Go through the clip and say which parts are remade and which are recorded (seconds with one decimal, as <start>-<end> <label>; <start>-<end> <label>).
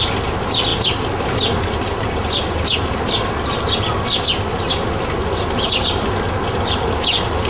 0.0-7.5 recorded